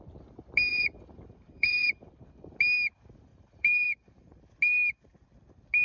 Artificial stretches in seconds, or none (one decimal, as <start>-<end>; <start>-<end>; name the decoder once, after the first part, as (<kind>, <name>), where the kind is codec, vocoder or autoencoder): 0.7-2.2 (vocoder, BigVGAN v2); 3.3-4.5